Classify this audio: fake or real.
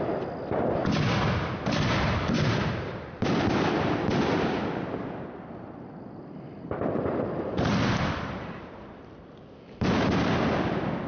real